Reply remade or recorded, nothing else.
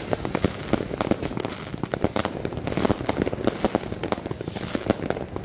recorded